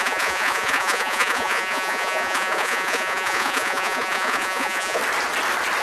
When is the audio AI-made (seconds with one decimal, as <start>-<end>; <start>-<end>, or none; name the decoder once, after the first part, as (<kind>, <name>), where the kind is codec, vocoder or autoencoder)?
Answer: 0.0-5.0 (vocoder, Vocos)